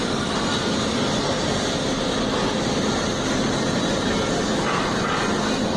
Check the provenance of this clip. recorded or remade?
recorded